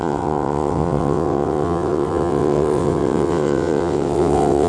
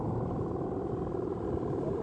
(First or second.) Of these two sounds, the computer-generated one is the first